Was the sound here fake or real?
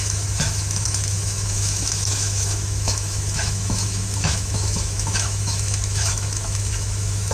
fake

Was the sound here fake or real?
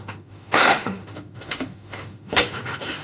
fake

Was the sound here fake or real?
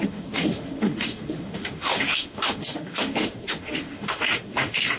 fake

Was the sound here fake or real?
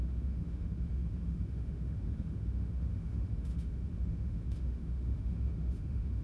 fake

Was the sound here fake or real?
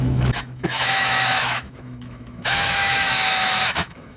fake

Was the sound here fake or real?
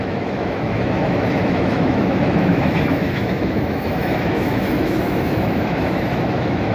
fake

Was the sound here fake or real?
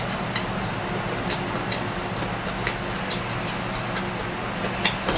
real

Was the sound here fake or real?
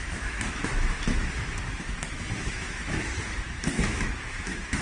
fake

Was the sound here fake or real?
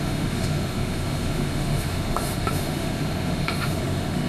fake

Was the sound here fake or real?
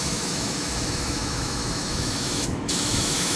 fake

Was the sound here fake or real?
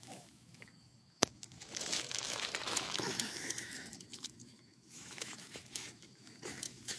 fake